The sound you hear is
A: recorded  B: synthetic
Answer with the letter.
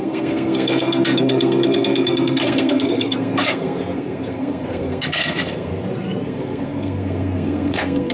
B